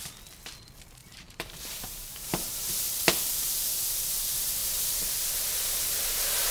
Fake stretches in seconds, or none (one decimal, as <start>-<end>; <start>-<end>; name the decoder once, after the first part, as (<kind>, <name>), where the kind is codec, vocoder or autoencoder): 1.0-2.6 (vocoder, BigVGAN v2)